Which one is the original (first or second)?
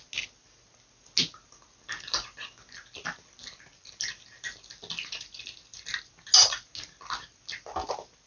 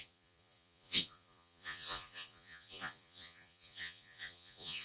first